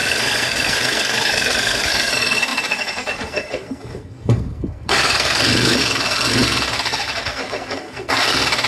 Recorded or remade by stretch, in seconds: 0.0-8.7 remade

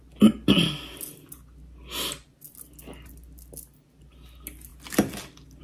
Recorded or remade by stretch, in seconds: 0.0-5.6 recorded

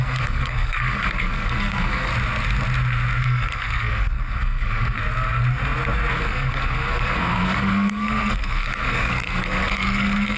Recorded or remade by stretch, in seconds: 0.0-2.1 remade; 2.1-3.2 recorded; 3.2-5.0 remade; 5.0-6.1 recorded; 6.1-10.4 remade

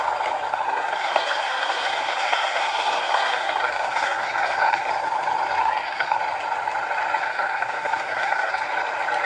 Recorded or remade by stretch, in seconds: 0.0-0.5 recorded; 0.5-4.9 remade; 4.9-5.6 recorded; 5.6-6.2 remade; 6.2-7.2 recorded; 7.2-8.5 remade; 8.5-9.3 recorded

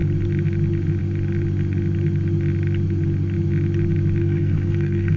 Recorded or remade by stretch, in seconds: 0.0-4.2 recorded; 4.2-5.2 remade

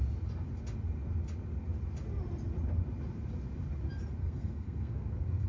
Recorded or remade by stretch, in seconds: 0.0-4.2 recorded; 4.2-5.5 remade

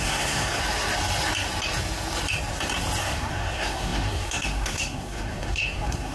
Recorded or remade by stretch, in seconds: 0.0-0.6 remade; 0.6-3.0 recorded; 3.0-6.1 remade

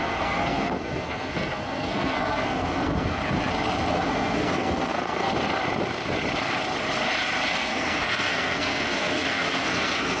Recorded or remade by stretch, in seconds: 0.0-3.2 remade; 3.2-3.9 recorded; 3.9-5.3 remade; 5.3-7.5 recorded; 7.5-10.2 remade